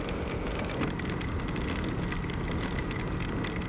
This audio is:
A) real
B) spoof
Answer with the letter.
A